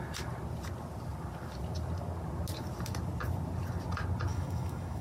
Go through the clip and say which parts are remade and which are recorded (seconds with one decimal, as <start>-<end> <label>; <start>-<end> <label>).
0.0-4.3 recorded; 4.3-5.0 remade